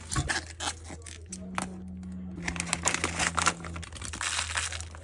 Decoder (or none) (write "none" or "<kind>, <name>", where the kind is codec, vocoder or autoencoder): none